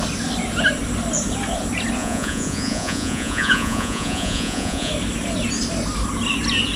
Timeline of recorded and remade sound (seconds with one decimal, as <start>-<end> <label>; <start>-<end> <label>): 0.0-2.0 recorded; 2.0-4.9 remade; 4.9-6.8 recorded